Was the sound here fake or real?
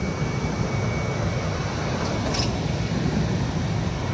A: real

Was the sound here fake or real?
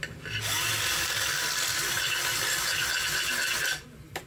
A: real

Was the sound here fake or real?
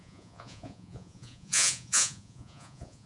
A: fake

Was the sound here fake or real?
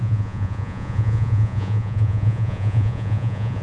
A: fake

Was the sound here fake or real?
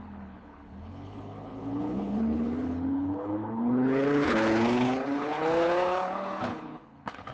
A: fake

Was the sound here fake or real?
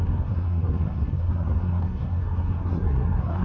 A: fake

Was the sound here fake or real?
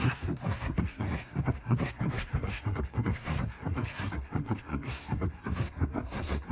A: fake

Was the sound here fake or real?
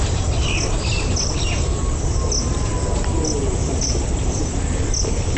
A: real